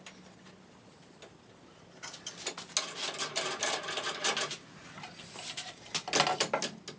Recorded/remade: recorded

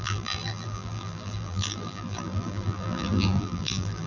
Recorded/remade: remade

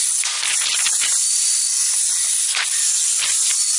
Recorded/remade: recorded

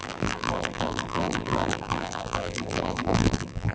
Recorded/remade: remade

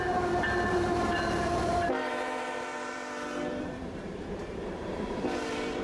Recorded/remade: remade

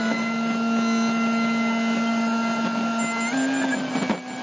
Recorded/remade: recorded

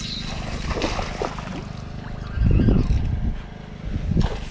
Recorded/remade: recorded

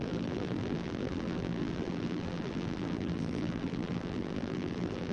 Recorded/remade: remade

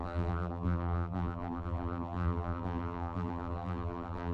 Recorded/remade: remade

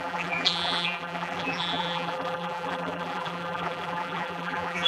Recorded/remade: remade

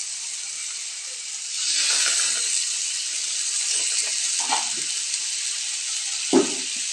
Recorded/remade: recorded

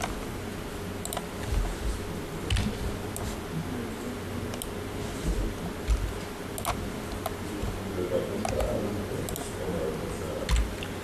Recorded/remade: recorded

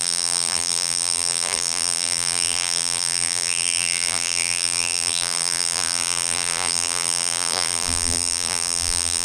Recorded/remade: remade